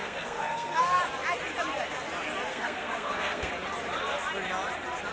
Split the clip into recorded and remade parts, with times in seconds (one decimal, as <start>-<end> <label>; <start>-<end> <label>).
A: 0.0-1.0 remade; 1.0-2.5 recorded; 2.5-3.5 remade; 3.5-5.1 recorded